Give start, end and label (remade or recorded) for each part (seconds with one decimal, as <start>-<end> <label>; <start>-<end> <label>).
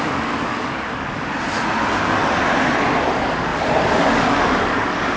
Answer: 0.0-1.3 remade; 1.3-3.1 recorded; 3.1-5.2 remade